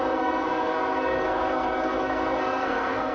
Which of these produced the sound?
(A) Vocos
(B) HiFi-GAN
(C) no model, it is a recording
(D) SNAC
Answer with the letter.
D